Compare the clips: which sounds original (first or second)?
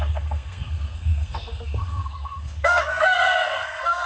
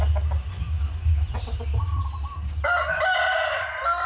second